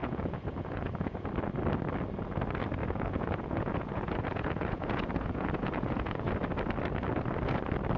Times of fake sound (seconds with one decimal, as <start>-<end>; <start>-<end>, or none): 0.0-1.3; 2.8-6.3